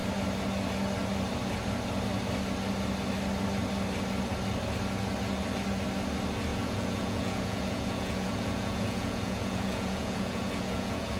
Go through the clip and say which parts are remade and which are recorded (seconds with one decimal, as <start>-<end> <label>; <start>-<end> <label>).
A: 0.0-6.5 recorded; 6.5-11.2 remade